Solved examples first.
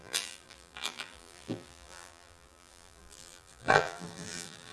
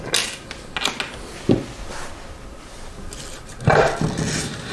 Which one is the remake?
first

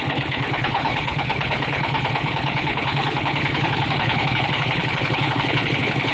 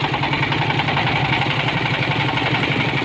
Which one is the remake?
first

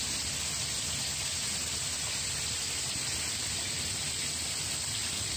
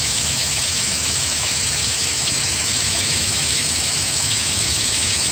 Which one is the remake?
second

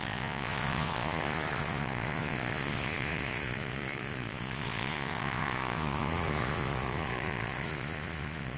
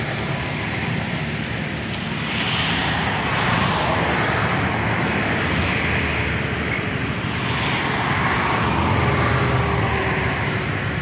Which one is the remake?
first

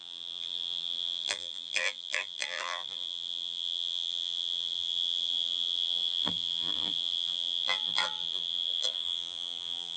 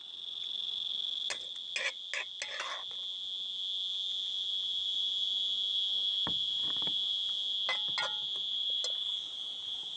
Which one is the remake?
first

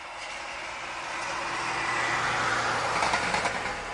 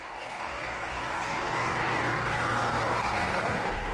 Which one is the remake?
second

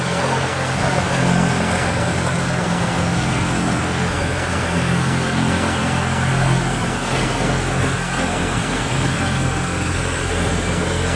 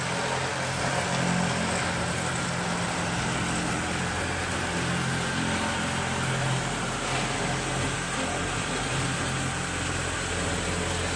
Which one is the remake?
first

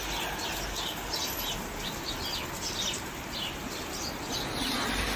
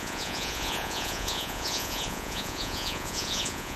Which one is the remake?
second